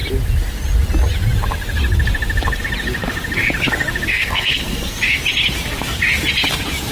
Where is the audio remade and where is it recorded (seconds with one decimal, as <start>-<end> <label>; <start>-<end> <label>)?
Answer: 0.0-4.1 recorded; 4.1-5.0 remade; 5.0-6.9 recorded